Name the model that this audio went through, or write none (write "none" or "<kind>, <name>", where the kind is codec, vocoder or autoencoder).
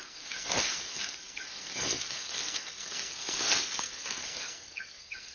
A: codec, SNAC